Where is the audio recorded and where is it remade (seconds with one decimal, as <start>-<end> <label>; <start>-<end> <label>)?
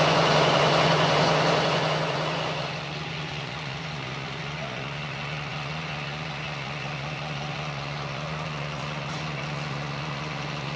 0.0-10.8 remade